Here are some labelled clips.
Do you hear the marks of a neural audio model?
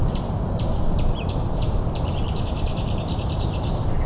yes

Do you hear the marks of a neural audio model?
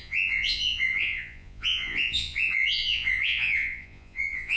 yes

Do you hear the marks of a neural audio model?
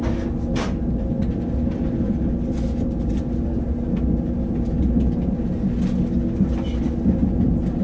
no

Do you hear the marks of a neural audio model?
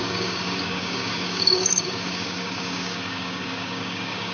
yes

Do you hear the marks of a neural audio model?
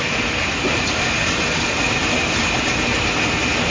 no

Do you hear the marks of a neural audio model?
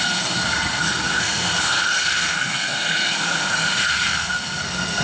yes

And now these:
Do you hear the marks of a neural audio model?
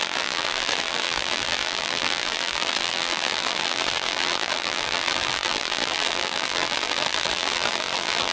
yes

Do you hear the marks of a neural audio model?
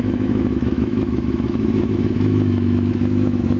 yes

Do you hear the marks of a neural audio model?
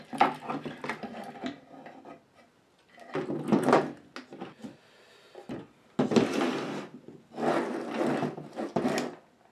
no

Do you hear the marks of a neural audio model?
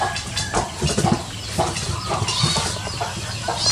no